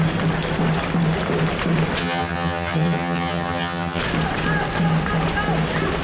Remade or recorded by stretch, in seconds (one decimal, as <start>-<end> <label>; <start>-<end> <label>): 0.0-2.0 recorded; 2.0-4.0 remade; 4.0-6.0 recorded